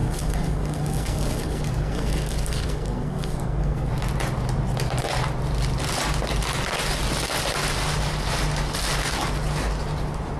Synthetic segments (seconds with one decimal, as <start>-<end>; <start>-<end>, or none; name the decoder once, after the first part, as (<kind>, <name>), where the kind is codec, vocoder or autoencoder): 0.0-3.9 (codec, SNAC)